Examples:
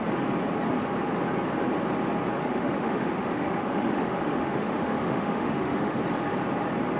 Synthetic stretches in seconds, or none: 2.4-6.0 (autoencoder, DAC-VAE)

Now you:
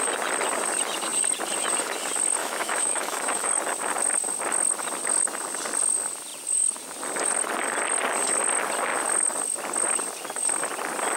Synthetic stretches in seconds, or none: 2.4-3.5 (autoencoder, DAC-VAE)

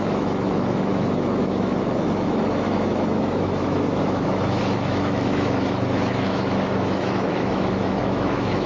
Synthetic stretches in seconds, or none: 0.0-8.7 (autoencoder, DAC-VAE)